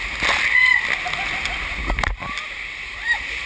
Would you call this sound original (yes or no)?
yes